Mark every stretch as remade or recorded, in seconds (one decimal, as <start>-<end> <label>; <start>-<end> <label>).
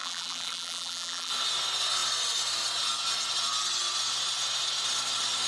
0.0-1.3 remade; 1.3-5.5 recorded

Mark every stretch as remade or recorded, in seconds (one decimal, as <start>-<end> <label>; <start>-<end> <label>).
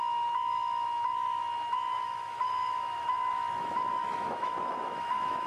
0.0-5.5 remade